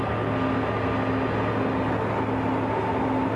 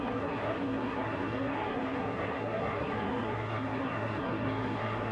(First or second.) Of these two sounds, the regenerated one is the second